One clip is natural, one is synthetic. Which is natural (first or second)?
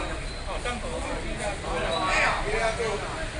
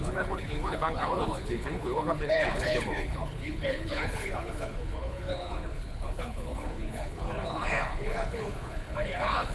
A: first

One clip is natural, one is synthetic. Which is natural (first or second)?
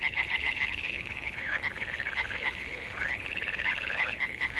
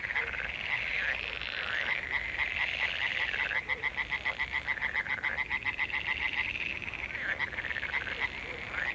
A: second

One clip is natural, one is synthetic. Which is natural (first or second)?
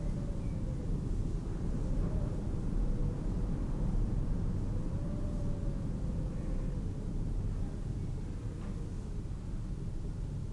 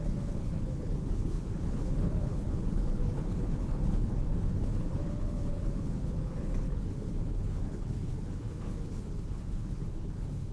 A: first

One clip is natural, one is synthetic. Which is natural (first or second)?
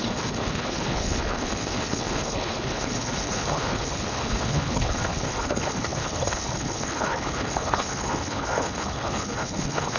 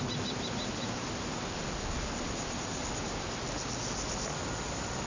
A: second